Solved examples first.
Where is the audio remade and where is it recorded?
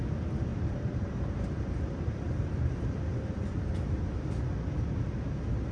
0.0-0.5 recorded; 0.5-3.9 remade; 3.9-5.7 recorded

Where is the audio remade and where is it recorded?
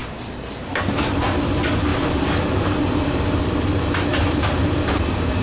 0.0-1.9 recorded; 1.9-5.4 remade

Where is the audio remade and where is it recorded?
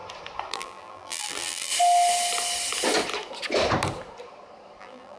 0.0-0.5 recorded; 0.5-1.7 remade; 1.7-4.8 recorded; 4.8-5.2 remade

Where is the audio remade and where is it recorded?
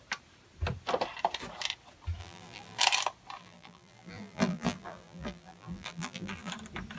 0.0-2.2 recorded; 2.2-2.8 remade; 2.8-3.4 recorded; 3.4-6.5 remade; 6.5-7.0 recorded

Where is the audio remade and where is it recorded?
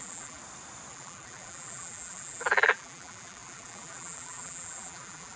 0.0-0.4 remade; 0.4-0.9 recorded; 0.9-5.4 remade